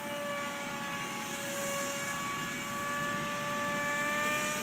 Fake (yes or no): no